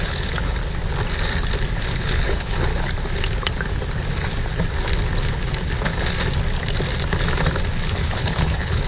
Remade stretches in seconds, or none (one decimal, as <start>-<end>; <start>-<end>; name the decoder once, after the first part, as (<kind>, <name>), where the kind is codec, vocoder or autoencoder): 0.0-0.6 (codec, HILCodec); 1.8-2.7; 7.9-8.9